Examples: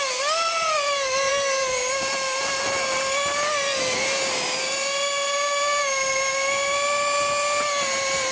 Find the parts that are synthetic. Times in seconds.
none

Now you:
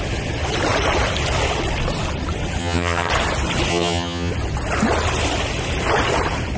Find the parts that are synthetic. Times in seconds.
2.6-3.1 (vocoder, HiFi-GAN); 3.7-4.3